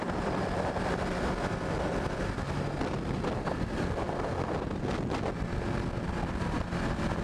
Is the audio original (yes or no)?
yes